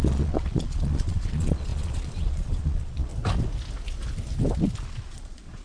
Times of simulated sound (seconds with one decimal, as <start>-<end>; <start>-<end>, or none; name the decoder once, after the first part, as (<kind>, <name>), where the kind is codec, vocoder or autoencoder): 0.0-3.1 (vocoder, Vocos); 4.9-5.6